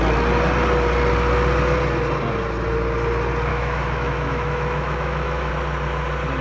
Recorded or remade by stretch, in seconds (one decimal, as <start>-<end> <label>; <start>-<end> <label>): 0.0-3.5 recorded; 3.5-5.5 remade; 5.5-6.4 recorded